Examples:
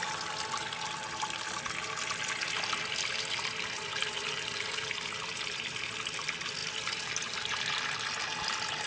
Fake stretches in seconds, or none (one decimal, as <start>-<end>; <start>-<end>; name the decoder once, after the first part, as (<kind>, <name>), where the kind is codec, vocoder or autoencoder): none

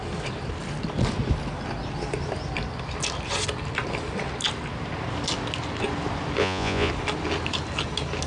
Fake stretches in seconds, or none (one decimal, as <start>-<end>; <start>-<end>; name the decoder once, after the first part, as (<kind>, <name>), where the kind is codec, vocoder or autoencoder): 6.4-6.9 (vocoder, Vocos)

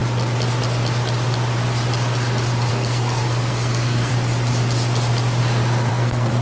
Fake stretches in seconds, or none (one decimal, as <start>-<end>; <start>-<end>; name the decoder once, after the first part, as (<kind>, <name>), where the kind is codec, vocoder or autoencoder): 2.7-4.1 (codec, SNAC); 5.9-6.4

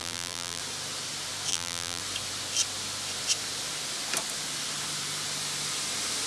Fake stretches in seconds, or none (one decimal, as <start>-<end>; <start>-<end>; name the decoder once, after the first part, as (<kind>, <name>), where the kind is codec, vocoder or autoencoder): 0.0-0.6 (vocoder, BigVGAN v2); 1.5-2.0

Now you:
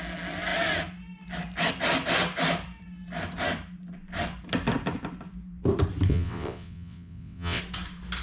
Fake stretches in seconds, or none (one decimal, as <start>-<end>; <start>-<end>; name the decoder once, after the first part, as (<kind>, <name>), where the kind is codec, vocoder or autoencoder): 6.1-7.6 (vocoder, WaveNeXt)